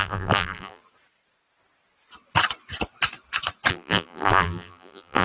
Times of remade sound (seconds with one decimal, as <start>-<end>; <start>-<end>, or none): 0.0-0.8; 3.7-5.2